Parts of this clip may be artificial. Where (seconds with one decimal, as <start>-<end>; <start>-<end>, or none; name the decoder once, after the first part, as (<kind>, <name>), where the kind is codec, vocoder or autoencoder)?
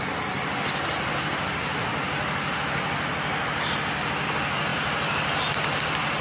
none